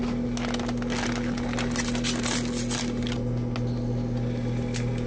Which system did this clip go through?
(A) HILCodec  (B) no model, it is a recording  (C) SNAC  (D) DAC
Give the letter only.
B